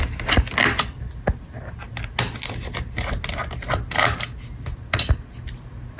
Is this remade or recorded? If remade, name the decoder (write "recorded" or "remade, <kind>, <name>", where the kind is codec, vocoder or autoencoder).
recorded